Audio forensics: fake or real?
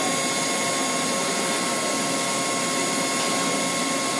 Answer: real